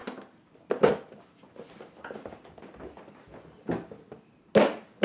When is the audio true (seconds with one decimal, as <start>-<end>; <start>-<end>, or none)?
0.0-5.0

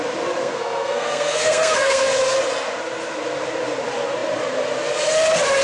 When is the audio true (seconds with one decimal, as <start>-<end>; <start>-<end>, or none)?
0.0-0.4; 2.2-5.6

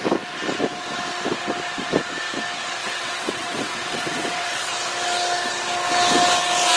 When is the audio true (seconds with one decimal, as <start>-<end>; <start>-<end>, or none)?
0.0-2.8; 4.7-6.8

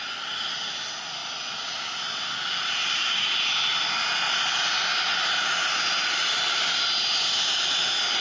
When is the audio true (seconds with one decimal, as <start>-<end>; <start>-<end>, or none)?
0.0-8.2